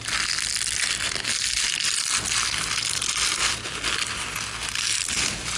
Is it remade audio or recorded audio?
recorded